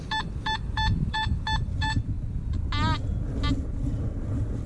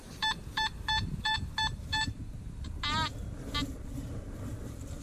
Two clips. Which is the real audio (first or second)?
first